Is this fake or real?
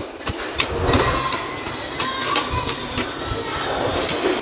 real